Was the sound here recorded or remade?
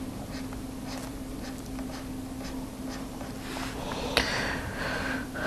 remade